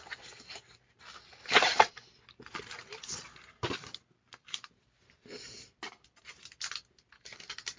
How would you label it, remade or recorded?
recorded